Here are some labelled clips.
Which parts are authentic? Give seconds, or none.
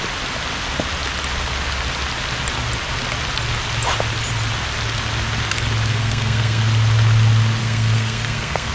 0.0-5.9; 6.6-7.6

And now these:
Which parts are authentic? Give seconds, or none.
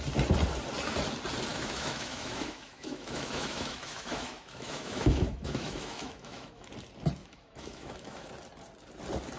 0.0-1.5; 6.7-7.2; 8.3-9.4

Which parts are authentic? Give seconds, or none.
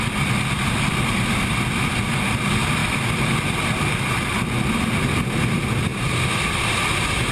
0.0-2.8; 4.0-5.9